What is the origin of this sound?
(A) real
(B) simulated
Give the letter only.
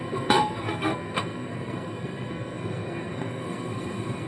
B